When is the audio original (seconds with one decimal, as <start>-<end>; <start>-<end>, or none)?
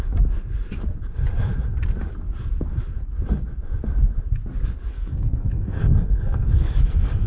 0.0-4.9